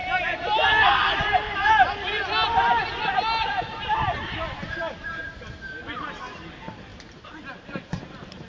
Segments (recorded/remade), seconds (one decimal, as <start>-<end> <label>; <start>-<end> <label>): 0.0-8.5 recorded